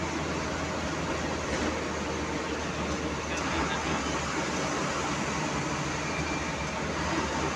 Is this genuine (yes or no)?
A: yes